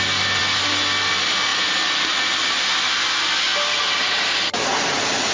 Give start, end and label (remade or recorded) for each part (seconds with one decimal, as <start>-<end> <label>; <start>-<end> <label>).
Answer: 0.0-3.5 recorded; 3.5-4.3 remade; 4.3-5.3 recorded